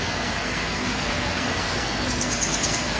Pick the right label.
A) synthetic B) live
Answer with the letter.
A